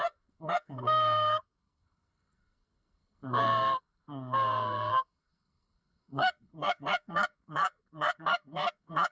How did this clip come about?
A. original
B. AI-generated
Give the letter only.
B